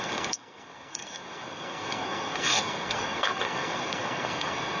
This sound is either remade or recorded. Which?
remade